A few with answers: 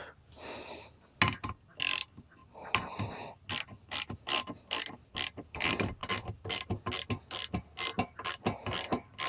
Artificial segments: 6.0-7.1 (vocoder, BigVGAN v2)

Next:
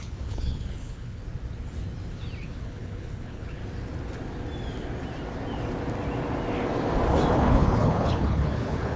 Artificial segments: 0.0-1.2 (codec, HILCodec); 2.4-3.6; 7.3-9.0

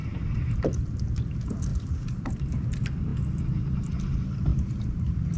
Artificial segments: 0.0-0.6 (vocoder, BigVGAN v2); 1.7-2.6; 4.5-5.4